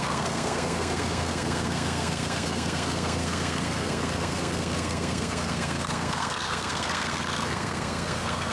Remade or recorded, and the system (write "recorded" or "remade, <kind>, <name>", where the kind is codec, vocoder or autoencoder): remade, codec, SNAC